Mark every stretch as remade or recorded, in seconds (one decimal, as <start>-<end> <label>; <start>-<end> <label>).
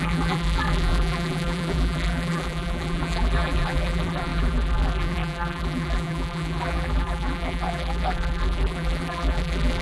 0.0-9.8 remade